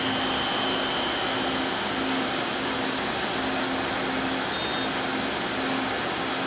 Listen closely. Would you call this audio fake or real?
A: real